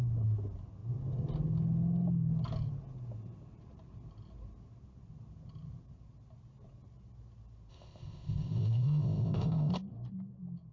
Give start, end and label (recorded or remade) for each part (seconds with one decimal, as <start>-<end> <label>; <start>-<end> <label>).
0.0-7.7 recorded; 7.7-9.7 remade; 9.7-10.7 recorded